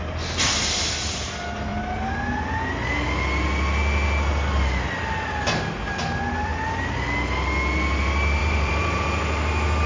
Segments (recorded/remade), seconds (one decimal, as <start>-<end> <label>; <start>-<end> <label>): 0.0-8.4 recorded; 8.4-9.0 remade; 9.0-9.9 recorded